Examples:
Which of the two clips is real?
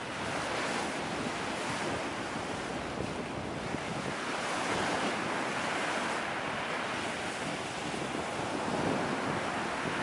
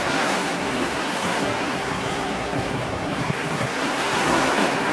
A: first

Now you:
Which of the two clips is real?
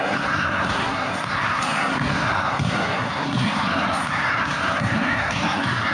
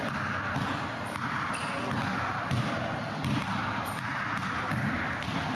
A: second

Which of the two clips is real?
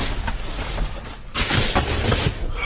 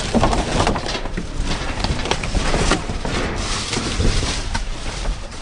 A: first